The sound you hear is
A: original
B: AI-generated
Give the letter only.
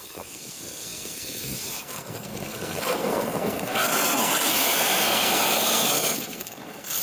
B